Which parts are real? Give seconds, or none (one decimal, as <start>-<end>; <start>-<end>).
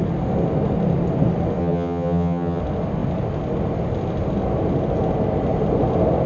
0.0-1.6; 2.6-6.3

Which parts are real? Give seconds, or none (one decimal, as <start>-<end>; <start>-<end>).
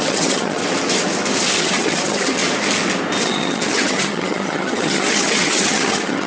0.6-1.6; 2.4-3.2